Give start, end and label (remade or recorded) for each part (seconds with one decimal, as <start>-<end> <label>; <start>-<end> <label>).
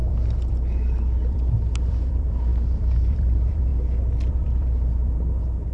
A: 0.0-3.7 remade; 3.7-4.3 recorded; 4.3-5.7 remade